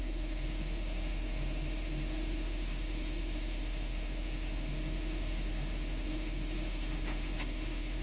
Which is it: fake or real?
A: fake